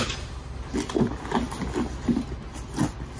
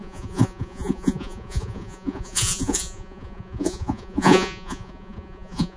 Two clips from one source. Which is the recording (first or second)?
first